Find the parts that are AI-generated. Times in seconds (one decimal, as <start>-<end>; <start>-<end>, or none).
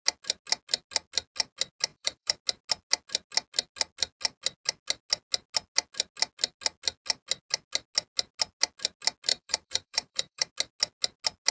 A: 1.9-2.4; 9.3-10.5